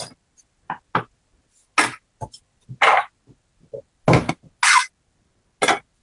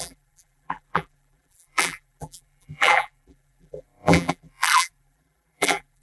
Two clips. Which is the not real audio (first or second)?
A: second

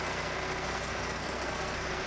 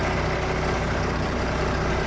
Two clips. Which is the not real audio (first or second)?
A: first